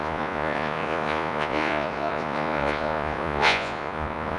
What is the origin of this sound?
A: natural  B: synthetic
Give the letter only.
B